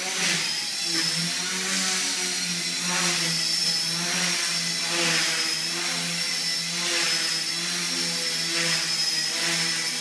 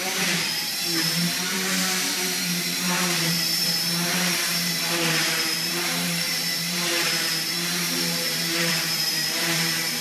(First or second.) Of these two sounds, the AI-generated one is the second